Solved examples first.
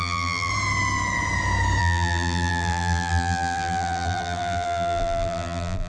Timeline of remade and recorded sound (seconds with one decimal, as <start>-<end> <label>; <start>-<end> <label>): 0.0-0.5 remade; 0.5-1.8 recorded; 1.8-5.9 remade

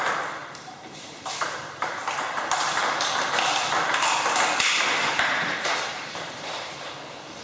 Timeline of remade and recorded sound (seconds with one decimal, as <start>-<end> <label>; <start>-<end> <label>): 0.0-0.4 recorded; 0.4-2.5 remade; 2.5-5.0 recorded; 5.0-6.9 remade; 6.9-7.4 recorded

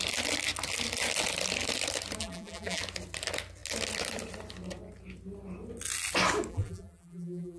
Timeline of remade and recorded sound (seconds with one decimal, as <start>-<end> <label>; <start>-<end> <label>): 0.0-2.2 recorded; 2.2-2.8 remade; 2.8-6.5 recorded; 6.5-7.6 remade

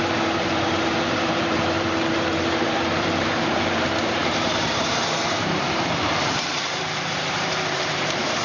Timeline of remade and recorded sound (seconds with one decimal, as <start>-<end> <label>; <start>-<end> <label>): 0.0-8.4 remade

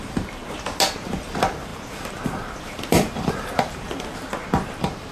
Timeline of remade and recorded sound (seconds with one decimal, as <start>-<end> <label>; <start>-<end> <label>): 0.0-0.4 remade; 0.4-1.0 recorded; 1.0-5.1 remade

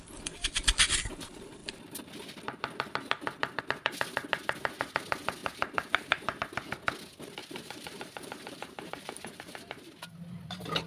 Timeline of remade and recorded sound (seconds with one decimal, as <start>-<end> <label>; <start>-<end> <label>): 0.0-5.4 recorded; 5.4-6.4 remade; 6.4-7.4 recorded; 7.4-9.9 remade; 9.9-10.9 recorded

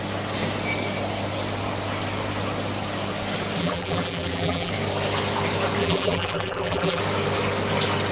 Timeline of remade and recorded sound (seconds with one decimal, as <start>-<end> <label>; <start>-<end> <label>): 0.0-3.6 recorded; 3.6-4.7 remade; 4.7-5.8 recorded; 5.8-7.0 remade; 7.0-8.1 recorded